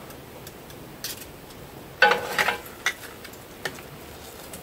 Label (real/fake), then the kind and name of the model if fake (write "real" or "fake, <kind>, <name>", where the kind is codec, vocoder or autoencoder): real